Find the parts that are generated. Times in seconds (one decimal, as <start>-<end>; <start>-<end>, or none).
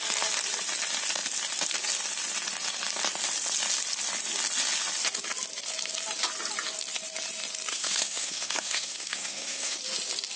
7.7-9.8